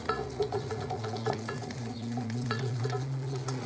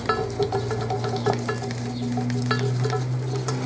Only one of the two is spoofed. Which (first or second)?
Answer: first